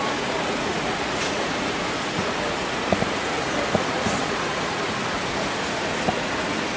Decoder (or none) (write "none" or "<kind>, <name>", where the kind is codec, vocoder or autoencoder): vocoder, Vocos